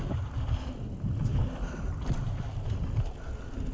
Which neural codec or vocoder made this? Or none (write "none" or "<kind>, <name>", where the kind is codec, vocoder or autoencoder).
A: none